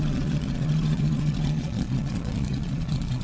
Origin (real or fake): fake